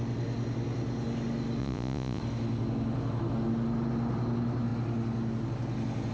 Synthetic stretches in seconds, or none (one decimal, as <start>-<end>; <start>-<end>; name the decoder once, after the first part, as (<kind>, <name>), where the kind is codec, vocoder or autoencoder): 1.6-2.2 (vocoder, Vocos)